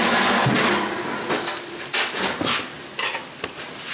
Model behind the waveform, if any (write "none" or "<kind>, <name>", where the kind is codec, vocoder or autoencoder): none